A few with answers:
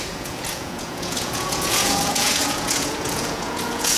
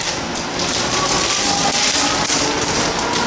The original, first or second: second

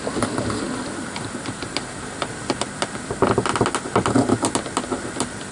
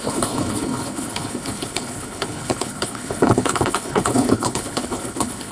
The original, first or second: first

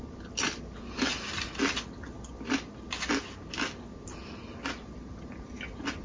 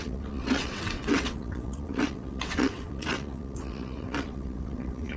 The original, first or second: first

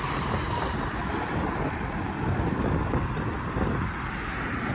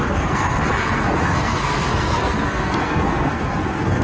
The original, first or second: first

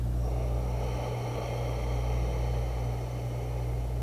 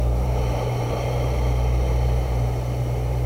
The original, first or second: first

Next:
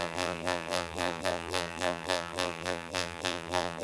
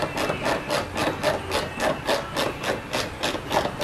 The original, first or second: second